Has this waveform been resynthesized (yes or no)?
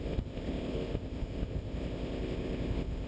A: yes